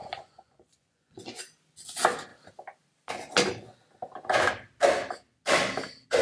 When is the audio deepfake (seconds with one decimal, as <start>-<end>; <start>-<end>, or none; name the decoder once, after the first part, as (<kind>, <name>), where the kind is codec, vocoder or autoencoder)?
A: 0.0-1.4 (vocoder, Vocos)